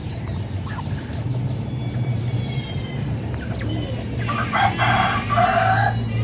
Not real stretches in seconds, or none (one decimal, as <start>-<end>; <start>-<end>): 0.0-3.7